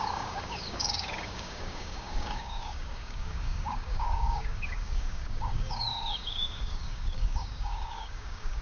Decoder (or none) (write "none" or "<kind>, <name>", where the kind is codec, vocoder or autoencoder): codec, DAC